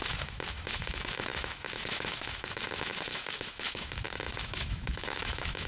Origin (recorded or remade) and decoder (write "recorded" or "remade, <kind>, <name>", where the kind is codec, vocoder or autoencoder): remade, autoencoder, DAC-VAE